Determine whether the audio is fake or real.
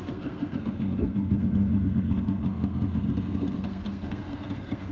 fake